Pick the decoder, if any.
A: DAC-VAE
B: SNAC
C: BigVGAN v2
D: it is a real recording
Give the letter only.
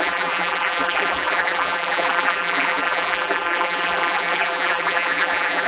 C